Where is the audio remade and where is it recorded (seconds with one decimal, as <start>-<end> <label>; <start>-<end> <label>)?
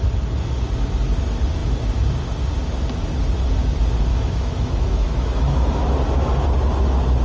0.0-4.1 recorded; 4.1-5.8 remade; 5.8-7.2 recorded